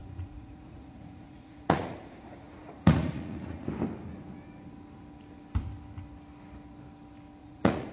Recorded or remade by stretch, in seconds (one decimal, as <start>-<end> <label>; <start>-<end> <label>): 0.0-3.7 remade; 3.7-7.4 recorded; 7.4-7.9 remade